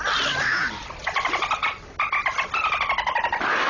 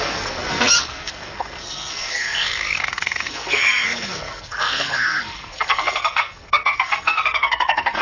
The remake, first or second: second